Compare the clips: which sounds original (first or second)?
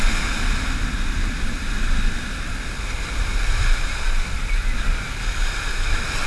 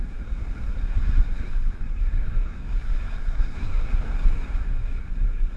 first